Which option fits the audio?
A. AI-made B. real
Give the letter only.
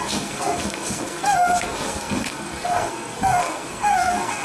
A